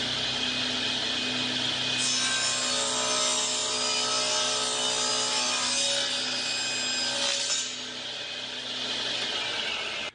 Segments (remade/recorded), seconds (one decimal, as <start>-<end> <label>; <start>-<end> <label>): 0.0-10.1 recorded